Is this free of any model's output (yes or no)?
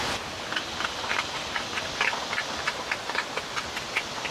yes